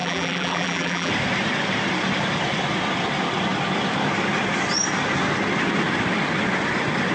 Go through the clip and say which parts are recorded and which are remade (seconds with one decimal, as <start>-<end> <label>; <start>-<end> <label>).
0.0-1.1 remade; 1.1-7.1 recorded